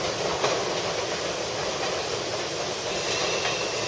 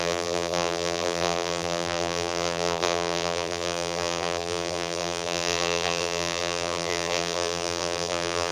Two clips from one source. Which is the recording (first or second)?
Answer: first